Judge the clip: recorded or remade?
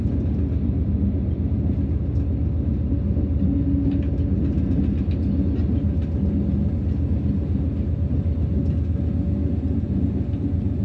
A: recorded